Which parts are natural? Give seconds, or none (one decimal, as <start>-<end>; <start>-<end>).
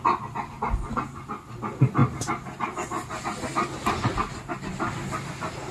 0.0-5.7